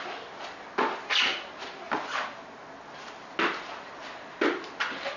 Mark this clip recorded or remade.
recorded